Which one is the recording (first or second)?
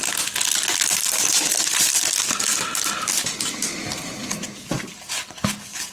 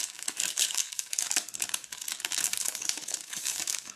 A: first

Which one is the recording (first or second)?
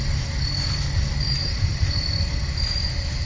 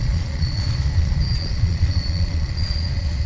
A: first